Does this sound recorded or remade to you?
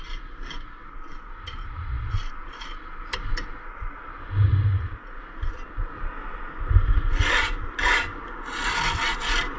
recorded